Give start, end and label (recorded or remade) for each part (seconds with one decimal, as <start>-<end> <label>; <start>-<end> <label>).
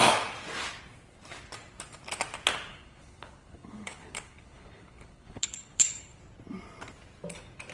0.0-2.7 recorded; 2.7-6.2 remade; 6.2-7.7 recorded